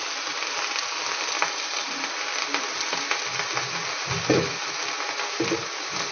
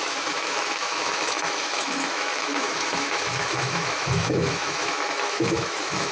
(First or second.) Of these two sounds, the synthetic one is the second